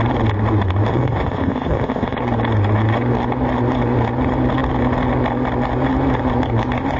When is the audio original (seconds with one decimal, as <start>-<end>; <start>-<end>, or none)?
0.0-0.9; 2.2-7.0